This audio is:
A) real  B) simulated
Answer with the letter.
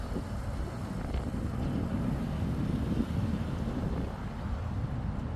A